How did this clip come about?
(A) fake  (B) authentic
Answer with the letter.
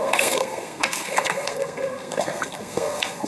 A